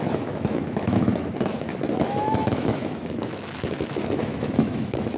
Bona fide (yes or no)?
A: no